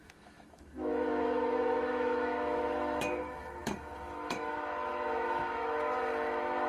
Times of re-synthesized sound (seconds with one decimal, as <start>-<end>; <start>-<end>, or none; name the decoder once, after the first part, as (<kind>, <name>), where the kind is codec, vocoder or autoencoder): 0.0-6.7 (autoencoder, DAC-VAE)